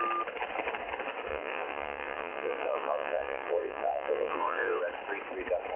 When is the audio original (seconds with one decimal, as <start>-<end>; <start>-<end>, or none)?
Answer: 0.0-1.3; 4.8-5.8